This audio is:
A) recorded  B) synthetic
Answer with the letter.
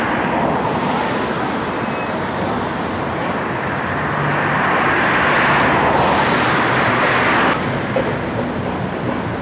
A